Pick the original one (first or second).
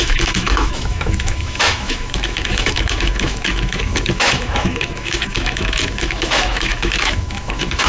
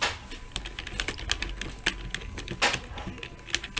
second